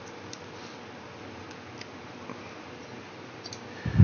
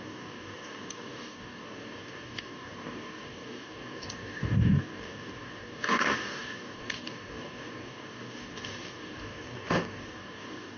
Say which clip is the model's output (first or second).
second